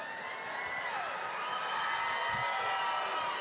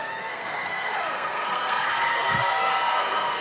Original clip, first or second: first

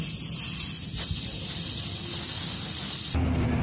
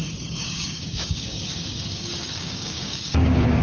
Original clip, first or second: first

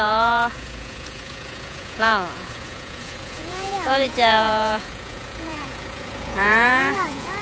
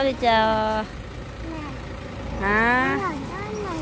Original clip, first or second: second